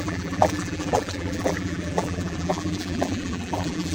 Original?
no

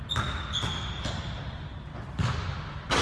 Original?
yes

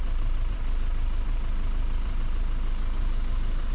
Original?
no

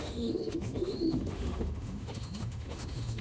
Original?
no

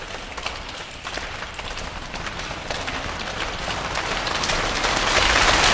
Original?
no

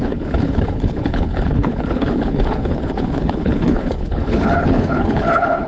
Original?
no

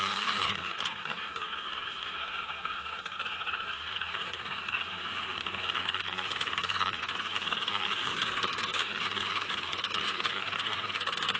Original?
no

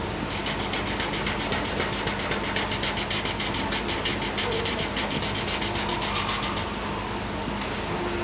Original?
yes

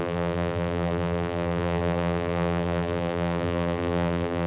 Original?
no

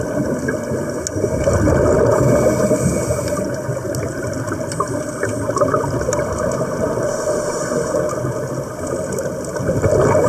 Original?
yes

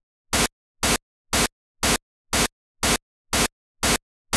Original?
yes